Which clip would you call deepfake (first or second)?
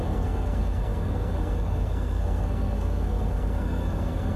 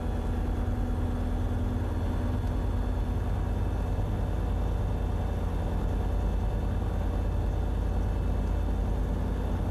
first